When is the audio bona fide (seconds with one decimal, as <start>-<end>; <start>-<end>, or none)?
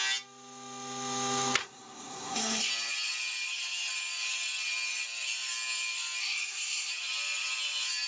0.0-1.6; 2.7-6.2; 6.9-8.1